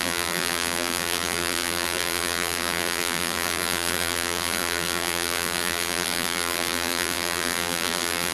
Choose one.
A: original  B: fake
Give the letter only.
B